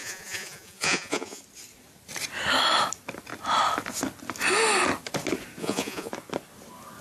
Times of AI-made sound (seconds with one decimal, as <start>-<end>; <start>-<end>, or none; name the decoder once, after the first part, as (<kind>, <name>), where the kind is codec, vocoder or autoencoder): 0.0-1.4 (vocoder, Vocos); 5.6-6.1